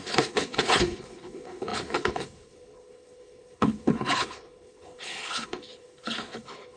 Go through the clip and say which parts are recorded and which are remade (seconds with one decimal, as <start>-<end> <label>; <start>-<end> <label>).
0.0-6.8 remade